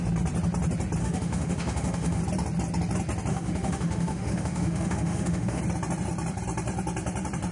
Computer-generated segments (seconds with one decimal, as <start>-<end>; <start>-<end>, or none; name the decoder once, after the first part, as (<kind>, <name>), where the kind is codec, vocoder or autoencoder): 1.0-2.2 (autoencoder, DAC-VAE); 3.3-5.6